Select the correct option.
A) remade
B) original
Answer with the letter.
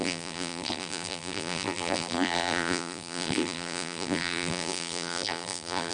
A